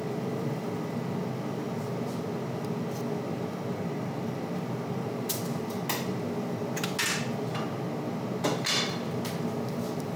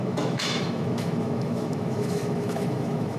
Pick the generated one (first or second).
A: second